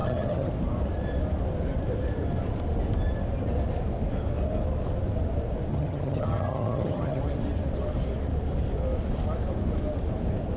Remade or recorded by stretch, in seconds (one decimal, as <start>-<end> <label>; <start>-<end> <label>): 0.0-0.5 remade; 0.5-5.7 recorded; 5.7-7.2 remade; 7.2-10.6 recorded